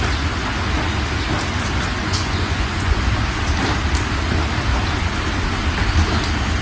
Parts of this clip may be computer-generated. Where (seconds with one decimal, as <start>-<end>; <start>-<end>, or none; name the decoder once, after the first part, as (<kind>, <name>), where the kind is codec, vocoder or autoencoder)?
2.0-3.0 (vocoder, Vocos)